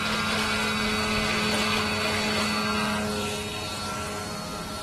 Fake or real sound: real